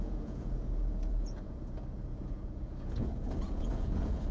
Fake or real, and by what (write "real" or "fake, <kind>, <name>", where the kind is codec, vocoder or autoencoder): fake, vocoder, Vocos